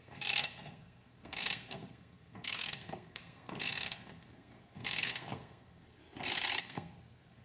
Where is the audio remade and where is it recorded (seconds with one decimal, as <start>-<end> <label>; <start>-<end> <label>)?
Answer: 0.0-6.0 remade; 6.0-6.6 recorded; 6.6-7.4 remade